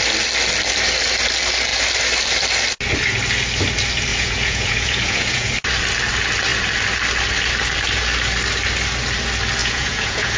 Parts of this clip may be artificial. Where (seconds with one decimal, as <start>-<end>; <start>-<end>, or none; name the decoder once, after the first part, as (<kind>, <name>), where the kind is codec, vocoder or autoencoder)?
4.1-5.5 (vocoder, Vocos); 9.6-10.4